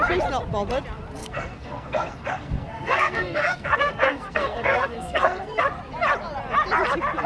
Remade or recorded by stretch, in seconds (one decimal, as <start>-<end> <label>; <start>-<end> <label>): 0.0-1.2 recorded; 1.2-5.6 remade; 5.6-7.3 recorded